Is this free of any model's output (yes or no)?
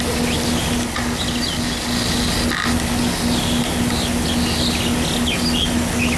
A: yes